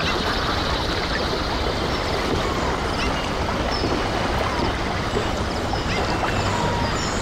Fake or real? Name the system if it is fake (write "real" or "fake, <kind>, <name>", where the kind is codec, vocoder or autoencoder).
real